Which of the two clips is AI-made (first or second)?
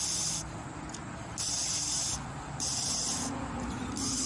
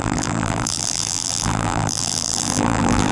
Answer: second